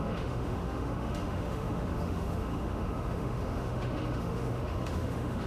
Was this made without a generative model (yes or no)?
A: no